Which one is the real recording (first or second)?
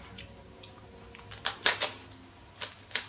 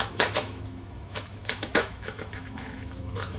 first